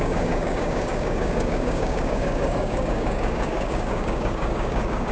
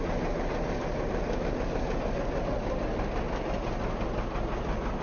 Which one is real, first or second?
second